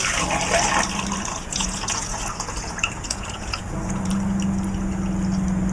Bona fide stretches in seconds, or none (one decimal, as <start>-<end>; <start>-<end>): 0.0-1.3; 4.1-5.7